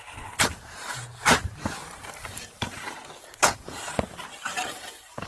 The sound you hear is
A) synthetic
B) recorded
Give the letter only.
A